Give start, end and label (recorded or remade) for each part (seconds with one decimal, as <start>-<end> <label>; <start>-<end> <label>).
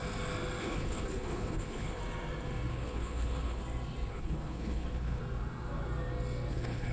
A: 0.0-0.6 recorded; 0.6-2.0 remade; 2.0-2.7 recorded; 2.7-3.6 remade; 3.6-4.1 recorded; 4.1-5.2 remade; 5.2-6.5 recorded; 6.5-6.9 remade